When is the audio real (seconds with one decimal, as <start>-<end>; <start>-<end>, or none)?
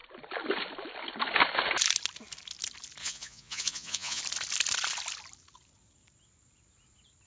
0.0-3.0; 4.2-7.3